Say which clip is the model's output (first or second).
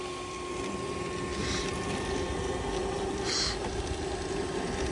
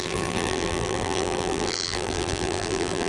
second